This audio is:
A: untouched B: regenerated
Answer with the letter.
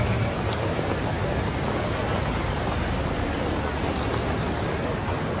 A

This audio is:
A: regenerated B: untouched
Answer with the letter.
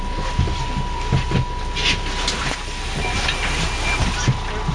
B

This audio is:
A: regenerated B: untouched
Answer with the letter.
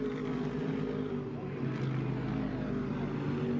B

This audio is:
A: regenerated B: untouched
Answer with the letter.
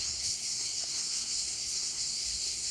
A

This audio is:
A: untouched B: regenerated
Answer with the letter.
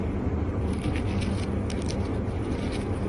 A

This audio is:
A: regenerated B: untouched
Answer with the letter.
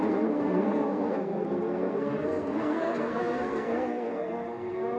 A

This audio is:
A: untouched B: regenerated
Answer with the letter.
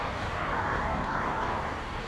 B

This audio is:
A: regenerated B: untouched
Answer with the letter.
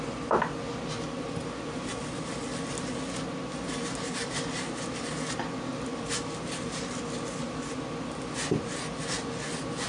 B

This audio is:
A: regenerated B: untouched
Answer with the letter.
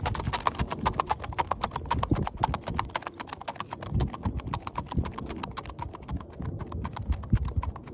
B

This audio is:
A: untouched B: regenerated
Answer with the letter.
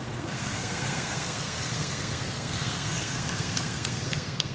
B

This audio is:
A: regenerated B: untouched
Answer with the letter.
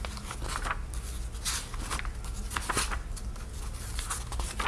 B